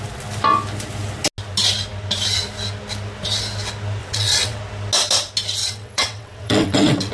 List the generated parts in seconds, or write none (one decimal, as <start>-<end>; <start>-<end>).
4.0-4.6; 5.6-7.1